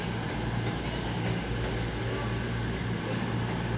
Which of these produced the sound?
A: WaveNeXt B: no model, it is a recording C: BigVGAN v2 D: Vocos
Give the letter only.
B